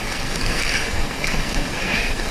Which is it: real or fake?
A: fake